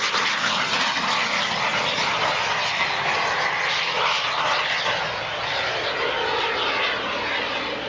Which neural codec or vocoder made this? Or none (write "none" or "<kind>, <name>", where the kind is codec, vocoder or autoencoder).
none